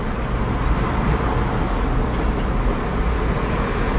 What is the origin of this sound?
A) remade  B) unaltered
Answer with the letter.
B